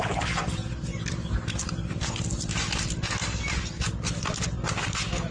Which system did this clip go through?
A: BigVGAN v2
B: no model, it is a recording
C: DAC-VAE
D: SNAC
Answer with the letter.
B